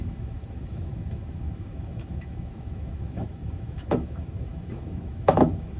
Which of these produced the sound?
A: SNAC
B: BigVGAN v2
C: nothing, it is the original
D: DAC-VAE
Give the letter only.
D